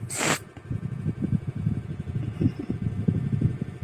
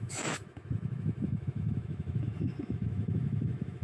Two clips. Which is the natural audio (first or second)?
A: first